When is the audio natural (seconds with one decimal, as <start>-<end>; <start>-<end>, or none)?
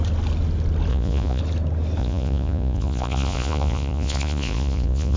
0.0-0.9; 1.4-2.0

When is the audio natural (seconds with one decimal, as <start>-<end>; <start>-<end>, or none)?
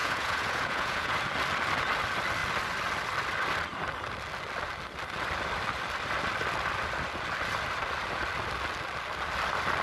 1.2-9.8